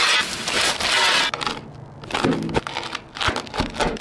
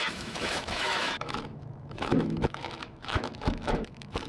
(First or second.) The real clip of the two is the first